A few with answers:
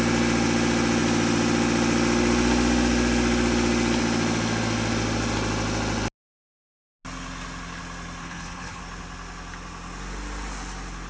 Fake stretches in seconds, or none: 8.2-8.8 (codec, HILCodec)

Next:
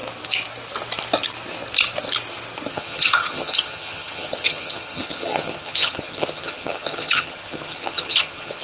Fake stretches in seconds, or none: 2.7-8.6 (vocoder, HiFi-GAN)

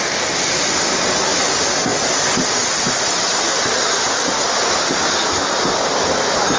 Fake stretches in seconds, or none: none

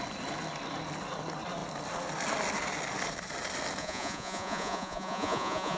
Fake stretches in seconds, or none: 3.8-5.8 (vocoder, Vocos)

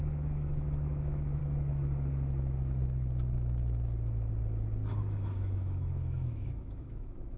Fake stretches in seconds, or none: 0.0-1.4 (autoencoder, DAC-VAE); 5.0-7.4

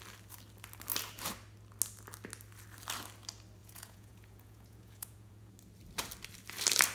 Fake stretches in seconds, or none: 3.6-5.6 (vocoder, Vocos)